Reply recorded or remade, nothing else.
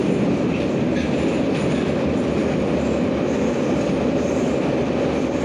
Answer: recorded